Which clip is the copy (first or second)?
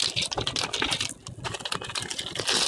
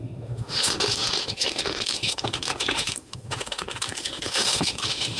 second